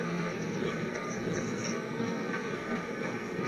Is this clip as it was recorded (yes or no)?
no